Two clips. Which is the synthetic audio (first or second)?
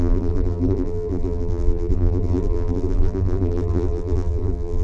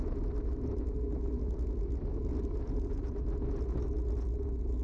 first